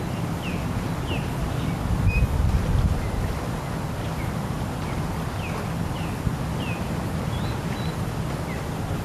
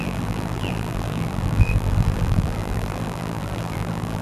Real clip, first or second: first